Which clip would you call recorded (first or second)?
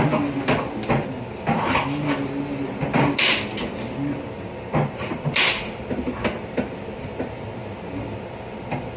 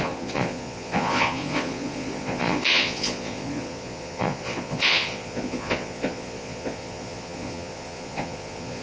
first